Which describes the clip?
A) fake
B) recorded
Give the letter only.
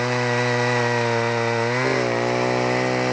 B